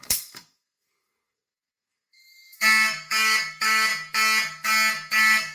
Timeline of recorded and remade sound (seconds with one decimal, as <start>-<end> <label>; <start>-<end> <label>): 0.0-3.9 remade; 3.9-5.1 recorded; 5.1-5.5 remade